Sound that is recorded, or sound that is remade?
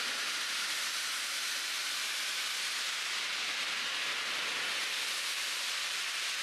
recorded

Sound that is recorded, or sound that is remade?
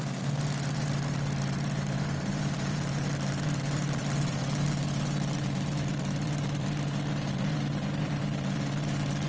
remade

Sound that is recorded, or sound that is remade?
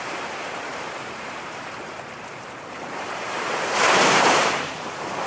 remade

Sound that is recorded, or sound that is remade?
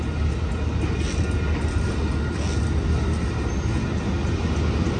recorded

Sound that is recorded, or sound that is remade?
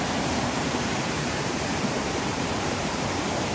remade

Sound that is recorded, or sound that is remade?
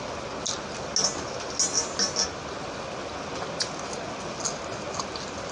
recorded